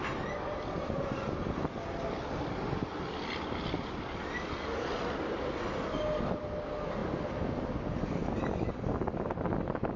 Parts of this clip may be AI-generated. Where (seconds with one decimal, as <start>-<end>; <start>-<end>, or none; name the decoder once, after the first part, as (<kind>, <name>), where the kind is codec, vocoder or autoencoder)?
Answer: none